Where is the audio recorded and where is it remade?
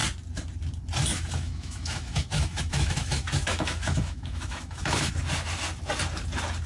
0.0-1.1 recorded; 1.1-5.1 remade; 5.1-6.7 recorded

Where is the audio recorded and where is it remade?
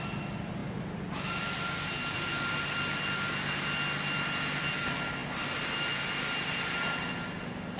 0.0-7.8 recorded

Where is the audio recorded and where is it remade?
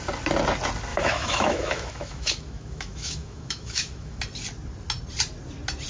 0.0-0.9 recorded; 0.9-4.2 remade; 4.2-5.9 recorded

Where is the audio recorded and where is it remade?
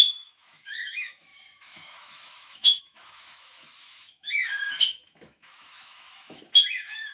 0.0-7.1 remade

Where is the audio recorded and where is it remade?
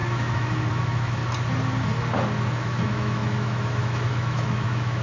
0.0-1.2 remade; 1.2-2.5 recorded; 2.5-5.0 remade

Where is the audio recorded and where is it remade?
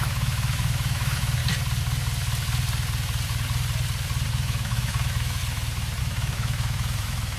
0.0-1.4 remade; 1.4-4.3 recorded; 4.3-5.4 remade; 5.4-6.0 recorded; 6.0-7.4 remade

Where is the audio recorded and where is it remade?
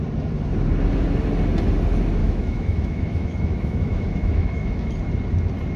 0.0-2.2 recorded; 2.2-4.9 remade; 4.9-5.8 recorded